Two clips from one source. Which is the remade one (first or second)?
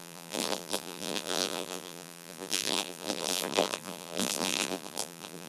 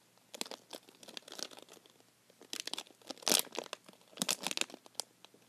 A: first